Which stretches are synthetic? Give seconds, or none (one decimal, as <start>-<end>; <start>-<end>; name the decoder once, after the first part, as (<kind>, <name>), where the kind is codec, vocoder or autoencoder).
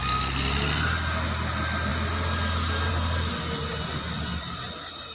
none